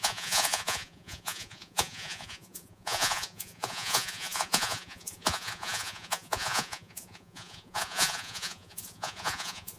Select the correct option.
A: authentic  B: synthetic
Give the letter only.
B